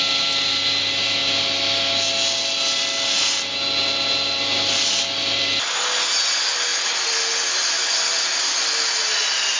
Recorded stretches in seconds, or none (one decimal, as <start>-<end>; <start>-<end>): 0.0-9.6